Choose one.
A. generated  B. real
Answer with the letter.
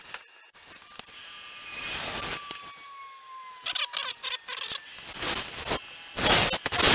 B